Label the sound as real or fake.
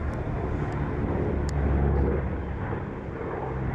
real